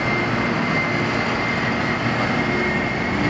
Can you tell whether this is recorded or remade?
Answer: recorded